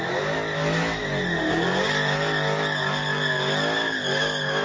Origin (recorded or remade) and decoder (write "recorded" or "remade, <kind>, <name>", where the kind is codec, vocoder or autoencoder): recorded